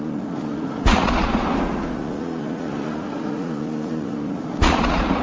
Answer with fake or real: fake